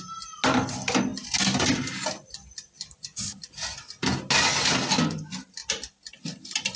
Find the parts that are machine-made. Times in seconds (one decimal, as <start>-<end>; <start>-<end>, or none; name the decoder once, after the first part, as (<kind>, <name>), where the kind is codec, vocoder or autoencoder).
none